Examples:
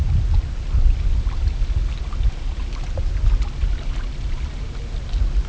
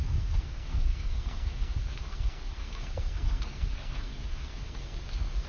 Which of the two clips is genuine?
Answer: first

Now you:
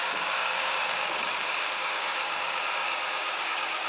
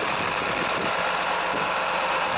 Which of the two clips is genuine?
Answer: second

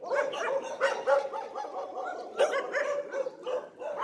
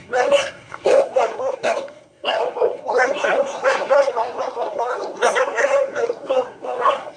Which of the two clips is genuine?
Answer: first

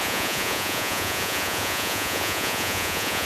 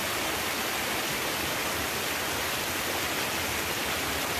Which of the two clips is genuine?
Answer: second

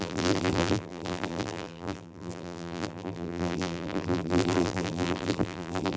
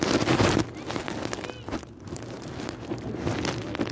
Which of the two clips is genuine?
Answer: second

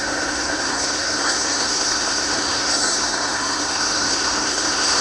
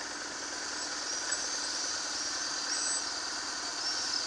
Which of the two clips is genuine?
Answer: second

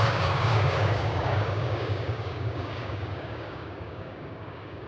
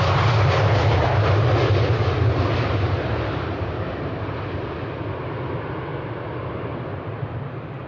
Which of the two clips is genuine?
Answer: second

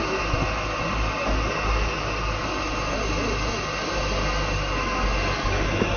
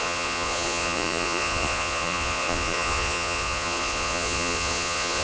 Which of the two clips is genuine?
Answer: first